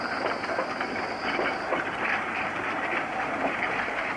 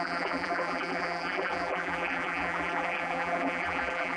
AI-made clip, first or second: second